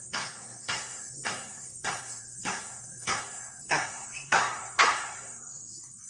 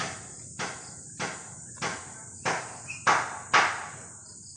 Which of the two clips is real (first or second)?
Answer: second